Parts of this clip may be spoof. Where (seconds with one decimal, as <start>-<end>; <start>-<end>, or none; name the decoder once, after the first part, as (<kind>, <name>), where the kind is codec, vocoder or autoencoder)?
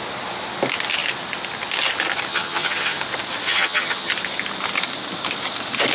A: 2.3-3.0 (vocoder, HiFi-GAN); 3.5-4.1